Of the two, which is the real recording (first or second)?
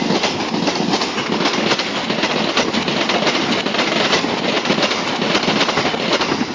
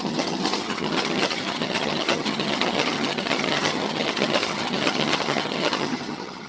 first